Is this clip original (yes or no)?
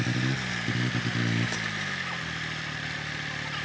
yes